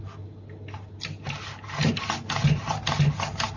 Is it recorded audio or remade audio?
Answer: recorded